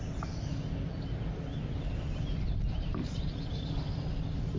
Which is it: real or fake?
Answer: real